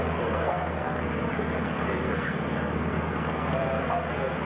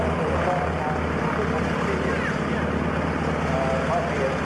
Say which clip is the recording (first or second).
second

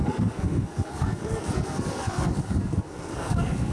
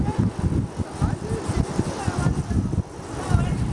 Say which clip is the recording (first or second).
second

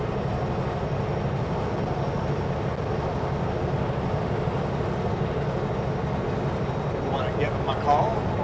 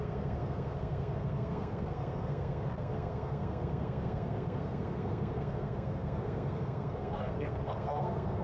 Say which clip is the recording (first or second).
first